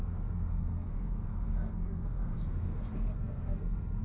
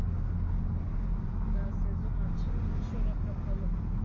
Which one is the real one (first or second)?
second